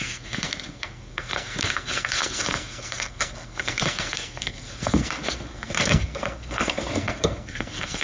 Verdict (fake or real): fake